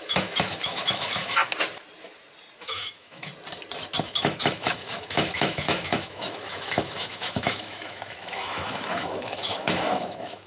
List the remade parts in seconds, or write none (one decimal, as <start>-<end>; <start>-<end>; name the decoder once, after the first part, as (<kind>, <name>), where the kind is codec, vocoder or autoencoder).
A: 0.0-1.4 (autoencoder, DAC-VAE); 2.6-3.3; 4.0-10.5